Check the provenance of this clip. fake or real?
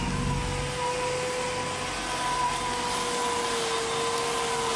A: real